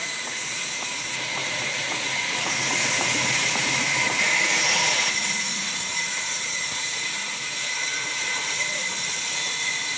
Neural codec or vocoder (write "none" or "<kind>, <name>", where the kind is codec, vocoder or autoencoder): vocoder, Vocos